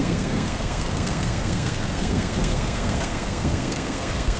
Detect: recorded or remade remade